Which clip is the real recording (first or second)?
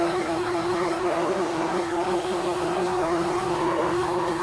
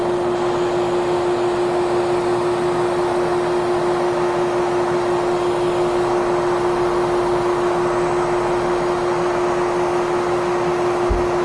second